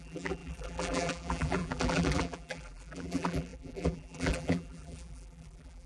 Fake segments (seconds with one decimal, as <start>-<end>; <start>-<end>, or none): 0.0-5.9